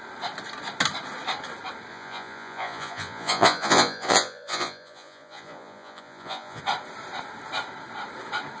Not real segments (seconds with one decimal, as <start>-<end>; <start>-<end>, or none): 1.9-6.6